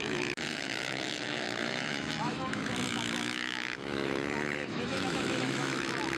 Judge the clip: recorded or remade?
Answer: remade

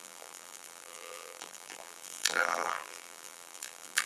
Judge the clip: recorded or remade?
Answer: remade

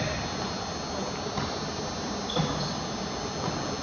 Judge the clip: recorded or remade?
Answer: recorded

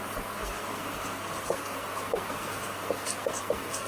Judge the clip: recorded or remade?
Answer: remade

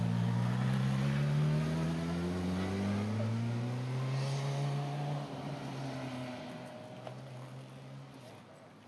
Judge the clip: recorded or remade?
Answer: recorded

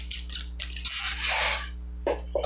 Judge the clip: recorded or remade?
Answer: recorded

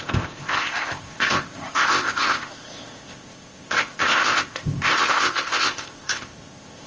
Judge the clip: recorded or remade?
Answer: remade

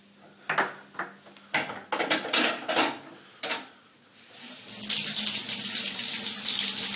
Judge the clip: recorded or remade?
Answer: recorded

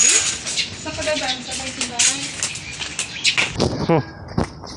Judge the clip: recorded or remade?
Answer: recorded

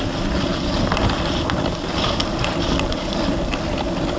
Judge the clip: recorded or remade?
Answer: recorded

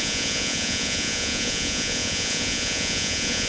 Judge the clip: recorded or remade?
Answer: remade